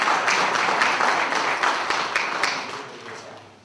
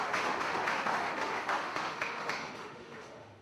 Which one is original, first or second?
first